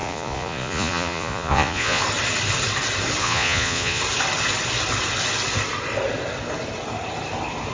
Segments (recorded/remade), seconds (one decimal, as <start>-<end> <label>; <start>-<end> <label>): 0.0-2.0 remade; 2.0-3.2 recorded; 3.2-4.0 remade; 4.0-7.7 recorded